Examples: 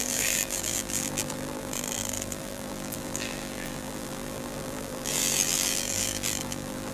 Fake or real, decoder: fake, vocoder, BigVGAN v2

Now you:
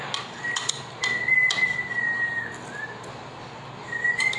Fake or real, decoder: real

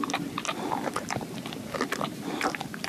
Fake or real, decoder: real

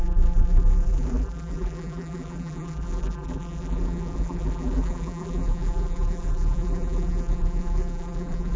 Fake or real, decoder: fake, vocoder, BigVGAN v2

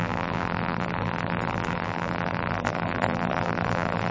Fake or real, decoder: fake, vocoder, BigVGAN v2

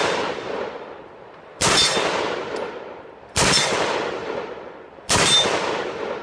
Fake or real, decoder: fake, vocoder, BigVGAN v2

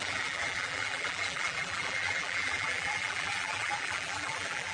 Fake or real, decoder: fake, vocoder, BigVGAN v2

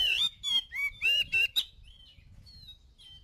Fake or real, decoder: fake, vocoder, BigVGAN v2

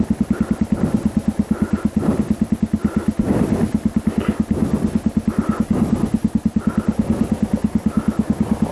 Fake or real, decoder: real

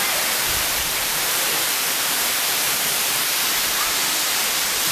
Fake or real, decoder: fake, vocoder, BigVGAN v2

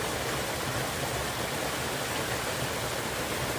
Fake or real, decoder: real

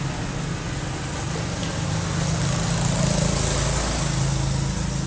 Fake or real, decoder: real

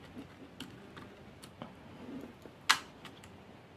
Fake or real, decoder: real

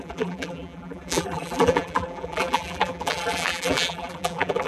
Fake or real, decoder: fake, vocoder, BigVGAN v2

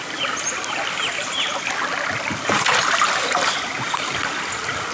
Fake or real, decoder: real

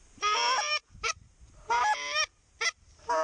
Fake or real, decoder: fake, vocoder, BigVGAN v2